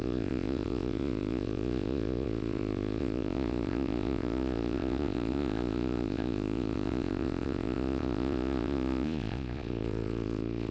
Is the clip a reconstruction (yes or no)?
yes